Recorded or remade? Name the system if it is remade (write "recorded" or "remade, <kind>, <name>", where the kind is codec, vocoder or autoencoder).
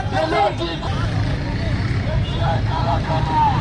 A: recorded